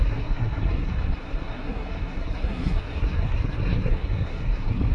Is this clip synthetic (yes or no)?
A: yes